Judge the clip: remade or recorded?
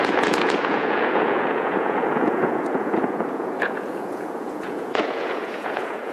remade